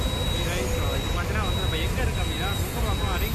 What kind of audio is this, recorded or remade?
recorded